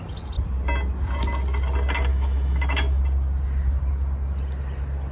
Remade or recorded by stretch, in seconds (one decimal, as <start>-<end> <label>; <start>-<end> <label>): 0.0-2.1 recorded; 2.1-3.0 remade; 3.0-5.1 recorded